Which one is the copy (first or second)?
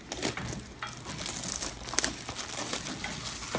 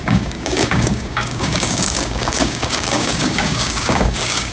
second